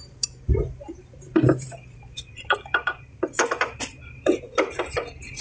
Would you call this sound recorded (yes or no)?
no